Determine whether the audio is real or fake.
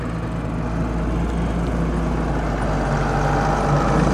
real